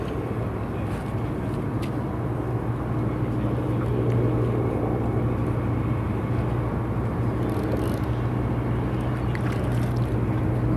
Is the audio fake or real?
real